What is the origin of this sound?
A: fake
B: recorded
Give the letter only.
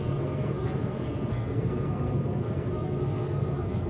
A